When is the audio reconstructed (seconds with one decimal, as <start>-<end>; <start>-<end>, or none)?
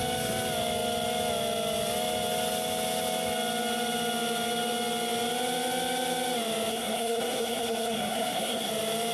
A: 6.7-8.7